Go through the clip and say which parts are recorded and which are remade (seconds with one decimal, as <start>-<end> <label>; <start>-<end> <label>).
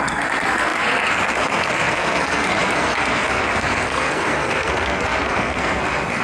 0.0-6.2 remade